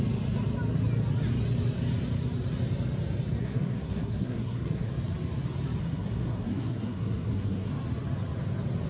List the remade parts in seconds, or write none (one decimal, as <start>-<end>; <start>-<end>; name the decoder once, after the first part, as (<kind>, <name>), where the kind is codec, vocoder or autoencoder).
3.4-4.9 (codec, SNAC); 5.8-7.7